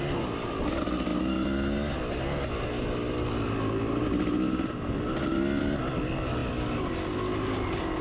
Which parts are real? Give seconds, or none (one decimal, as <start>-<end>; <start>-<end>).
0.0-8.0